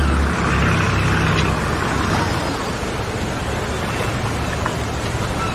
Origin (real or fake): real